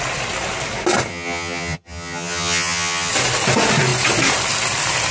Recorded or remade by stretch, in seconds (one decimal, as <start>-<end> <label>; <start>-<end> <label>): 0.0-1.1 recorded; 1.1-3.1 remade; 3.1-5.1 recorded